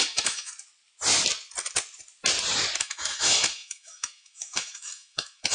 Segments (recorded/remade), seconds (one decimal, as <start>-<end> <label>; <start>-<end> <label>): 0.0-0.5 remade; 0.5-2.8 recorded; 2.8-5.5 remade